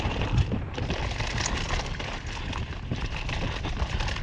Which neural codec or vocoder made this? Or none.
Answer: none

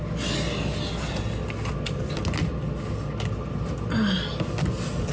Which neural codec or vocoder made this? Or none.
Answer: none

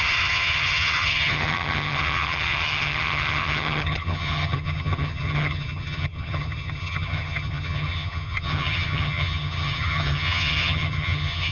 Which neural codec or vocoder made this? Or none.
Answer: vocoder, HiFi-GAN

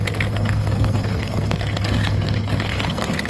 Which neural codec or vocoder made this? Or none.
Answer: codec, SNAC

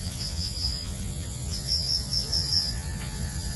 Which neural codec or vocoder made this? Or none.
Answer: vocoder, Vocos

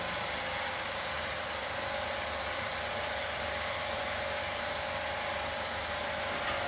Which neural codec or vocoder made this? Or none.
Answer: vocoder, BigVGAN v2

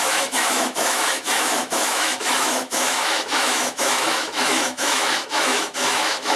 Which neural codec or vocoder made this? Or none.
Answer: autoencoder, DAC-VAE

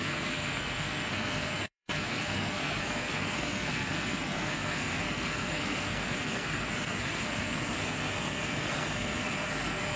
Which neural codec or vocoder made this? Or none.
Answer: codec, SNAC